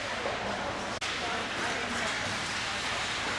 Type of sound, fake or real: real